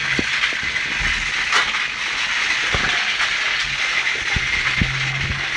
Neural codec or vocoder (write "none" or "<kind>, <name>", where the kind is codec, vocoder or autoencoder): none